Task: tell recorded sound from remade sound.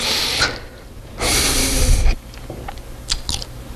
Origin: recorded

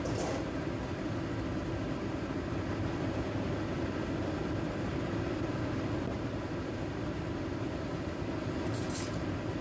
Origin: recorded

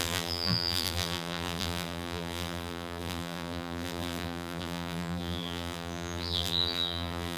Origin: remade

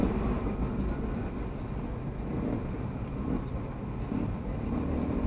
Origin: recorded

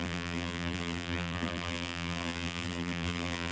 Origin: remade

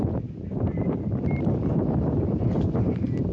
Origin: remade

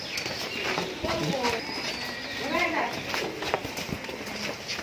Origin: recorded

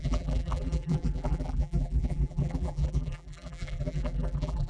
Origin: remade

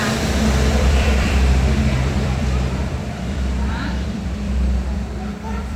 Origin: remade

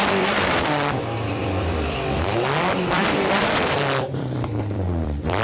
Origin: remade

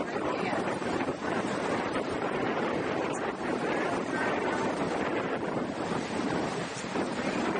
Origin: remade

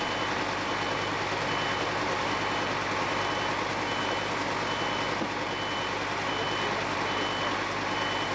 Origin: recorded